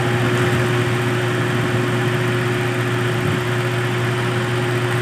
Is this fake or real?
real